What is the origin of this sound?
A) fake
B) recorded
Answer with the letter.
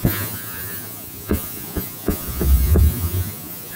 A